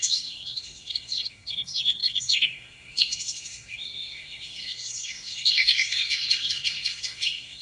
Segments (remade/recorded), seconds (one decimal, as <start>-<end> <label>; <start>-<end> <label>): 0.0-7.6 remade